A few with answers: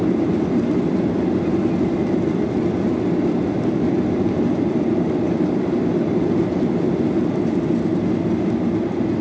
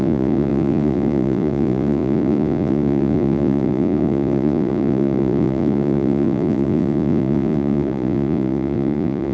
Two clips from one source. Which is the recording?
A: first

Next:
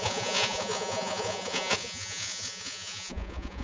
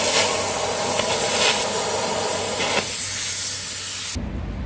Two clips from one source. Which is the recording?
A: second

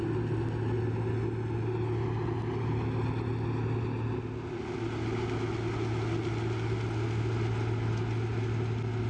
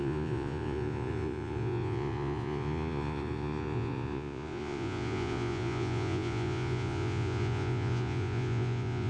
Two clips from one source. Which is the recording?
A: first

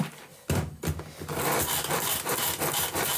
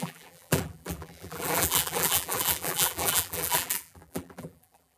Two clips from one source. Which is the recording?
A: first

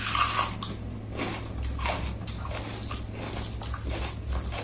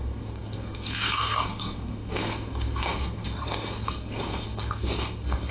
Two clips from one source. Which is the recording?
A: first